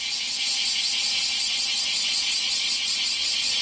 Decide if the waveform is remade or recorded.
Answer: recorded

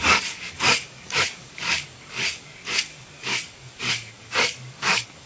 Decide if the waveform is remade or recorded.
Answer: remade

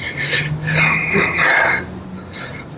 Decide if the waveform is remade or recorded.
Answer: recorded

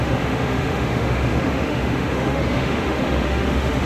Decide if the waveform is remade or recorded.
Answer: remade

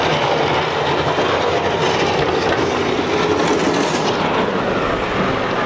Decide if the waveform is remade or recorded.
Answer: recorded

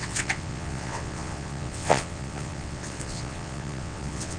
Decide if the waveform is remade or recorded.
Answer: remade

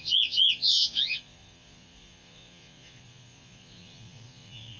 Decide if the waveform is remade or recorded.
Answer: remade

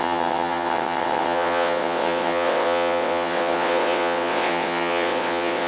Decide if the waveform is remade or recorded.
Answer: remade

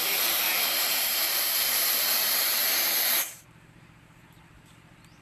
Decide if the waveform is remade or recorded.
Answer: remade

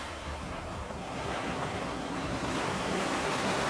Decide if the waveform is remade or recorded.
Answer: remade